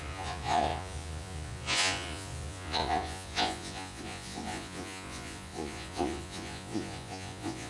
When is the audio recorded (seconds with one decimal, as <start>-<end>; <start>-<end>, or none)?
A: none